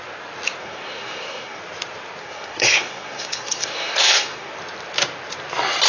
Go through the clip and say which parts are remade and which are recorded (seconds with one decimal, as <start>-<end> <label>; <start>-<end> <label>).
0.0-0.6 recorded; 0.6-1.6 remade; 1.6-2.2 recorded; 2.2-4.5 remade; 4.5-5.9 recorded